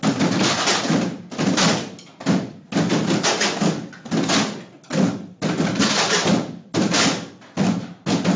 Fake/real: real